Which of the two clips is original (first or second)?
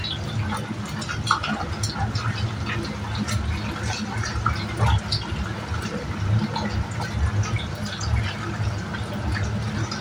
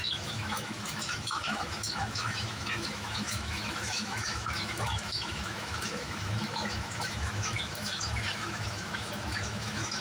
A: first